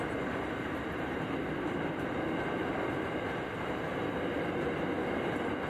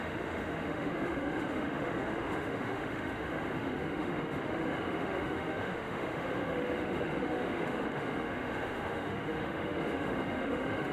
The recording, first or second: first